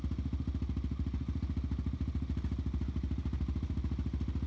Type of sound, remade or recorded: recorded